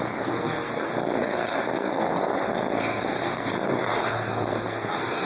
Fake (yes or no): yes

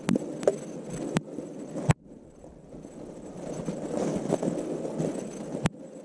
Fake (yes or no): no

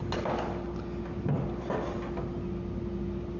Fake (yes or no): no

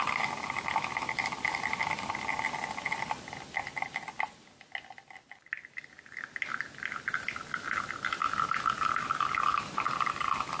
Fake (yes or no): no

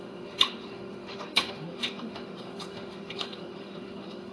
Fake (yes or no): yes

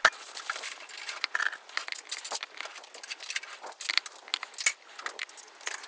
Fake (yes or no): no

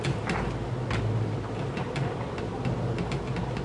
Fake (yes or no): no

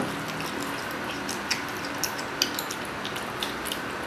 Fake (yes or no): no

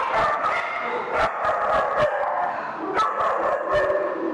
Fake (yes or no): no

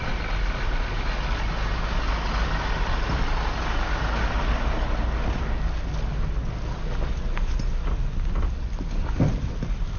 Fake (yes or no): no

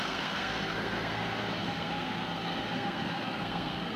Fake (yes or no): yes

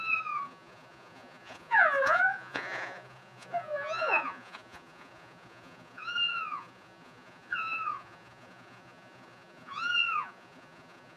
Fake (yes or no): yes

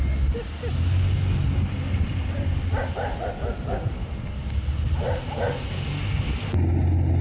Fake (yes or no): no